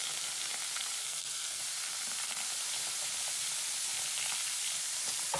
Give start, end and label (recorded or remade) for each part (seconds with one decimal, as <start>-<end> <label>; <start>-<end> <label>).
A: 0.0-1.0 recorded; 1.0-1.6 remade; 1.6-5.4 recorded